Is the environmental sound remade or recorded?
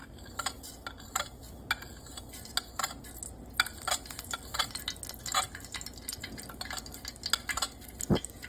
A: recorded